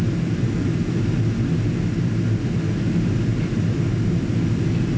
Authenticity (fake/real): real